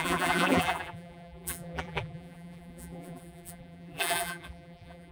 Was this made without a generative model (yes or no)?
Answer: no